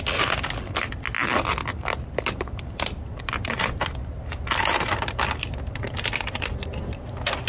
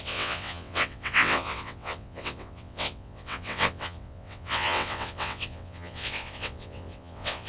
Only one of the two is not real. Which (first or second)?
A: second